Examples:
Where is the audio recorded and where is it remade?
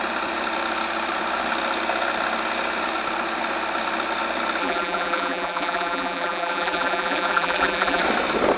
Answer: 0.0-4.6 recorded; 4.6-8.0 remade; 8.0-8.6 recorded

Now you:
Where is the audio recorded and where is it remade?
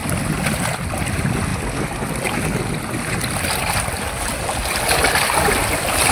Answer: 0.0-0.6 remade; 0.6-6.1 recorded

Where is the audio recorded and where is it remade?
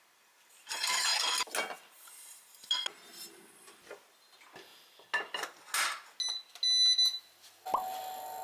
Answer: 0.0-8.4 recorded